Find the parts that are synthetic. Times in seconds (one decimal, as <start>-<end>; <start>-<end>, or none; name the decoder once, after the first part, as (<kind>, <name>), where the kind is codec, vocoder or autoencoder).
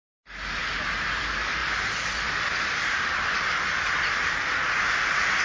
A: 0.6-1.2 (vocoder, BigVGAN v2)